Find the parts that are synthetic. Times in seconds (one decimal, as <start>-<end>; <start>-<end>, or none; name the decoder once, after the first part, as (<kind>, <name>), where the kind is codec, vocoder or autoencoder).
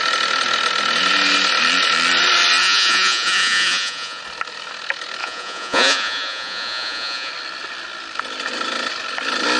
2.6-4.2 (vocoder, Vocos); 5.2-7.3